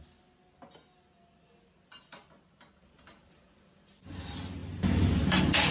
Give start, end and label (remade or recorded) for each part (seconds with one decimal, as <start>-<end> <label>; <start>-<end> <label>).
0.0-5.7 recorded